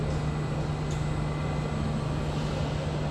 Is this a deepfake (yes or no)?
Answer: no